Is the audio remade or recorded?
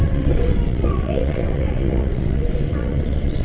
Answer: remade